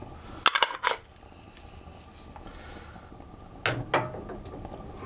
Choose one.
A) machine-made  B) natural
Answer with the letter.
B